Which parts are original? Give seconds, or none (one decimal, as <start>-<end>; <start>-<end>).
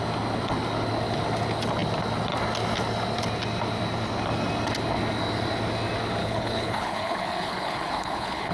0.0-6.2